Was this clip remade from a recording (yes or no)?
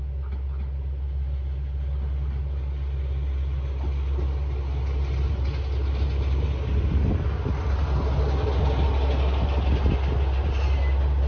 no